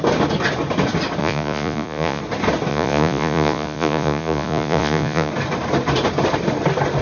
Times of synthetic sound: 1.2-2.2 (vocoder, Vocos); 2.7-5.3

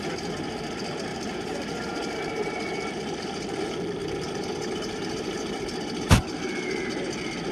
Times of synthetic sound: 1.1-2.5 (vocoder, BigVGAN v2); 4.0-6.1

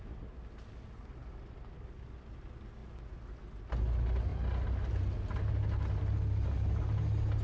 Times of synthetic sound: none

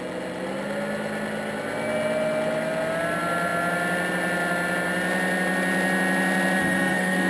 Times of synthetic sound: 6.6-7.3 (codec, SNAC)

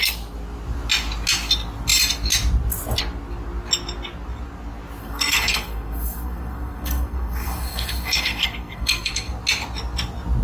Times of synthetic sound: 5.0-9.3 (codec, SNAC)

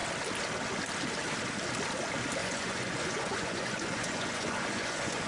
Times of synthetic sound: 2.4-5.3 (vocoder, Vocos)

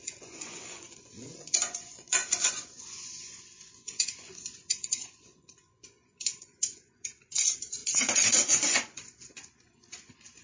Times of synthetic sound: 0.0-7.8 (vocoder, Vocos); 8.5-10.4

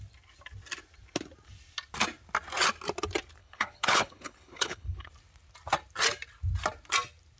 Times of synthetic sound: 3.4-5.1 (codec, HILCodec)